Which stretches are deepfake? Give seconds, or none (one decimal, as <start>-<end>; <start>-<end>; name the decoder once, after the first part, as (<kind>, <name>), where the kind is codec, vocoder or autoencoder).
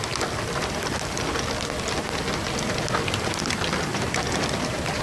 none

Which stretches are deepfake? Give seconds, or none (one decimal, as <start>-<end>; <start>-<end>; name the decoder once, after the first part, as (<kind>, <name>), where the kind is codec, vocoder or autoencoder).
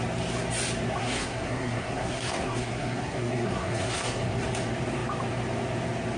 1.0-4.3 (codec, SNAC)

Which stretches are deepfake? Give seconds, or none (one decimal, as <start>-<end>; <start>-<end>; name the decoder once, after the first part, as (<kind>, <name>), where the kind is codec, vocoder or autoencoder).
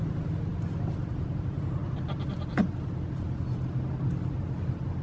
none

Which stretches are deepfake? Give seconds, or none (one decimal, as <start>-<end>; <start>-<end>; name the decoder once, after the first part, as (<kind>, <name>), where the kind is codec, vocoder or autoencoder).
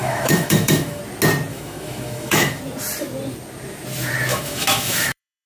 0.0-1.0 (autoencoder, DAC-VAE); 1.5-2.6; 4.3-5.5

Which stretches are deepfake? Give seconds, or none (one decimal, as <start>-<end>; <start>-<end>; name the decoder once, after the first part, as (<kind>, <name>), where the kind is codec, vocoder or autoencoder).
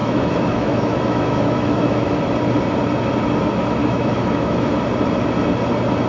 0.0-2.1 (autoencoder, DAC-VAE); 3.8-4.7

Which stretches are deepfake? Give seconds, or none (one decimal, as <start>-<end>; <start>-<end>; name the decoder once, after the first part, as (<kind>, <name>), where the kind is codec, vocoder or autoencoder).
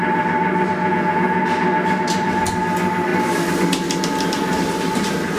0.8-1.4 (vocoder, Vocos)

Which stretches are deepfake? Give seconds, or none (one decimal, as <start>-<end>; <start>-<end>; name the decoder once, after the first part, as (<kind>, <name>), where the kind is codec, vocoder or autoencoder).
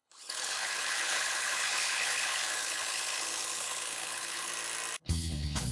0.0-4.5 (codec, HILCodec); 5.0-5.7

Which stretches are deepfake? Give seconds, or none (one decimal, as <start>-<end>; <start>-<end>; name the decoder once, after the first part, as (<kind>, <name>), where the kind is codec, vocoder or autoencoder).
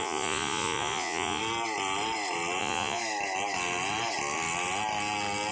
0.0-1.4 (vocoder, Vocos); 2.6-3.0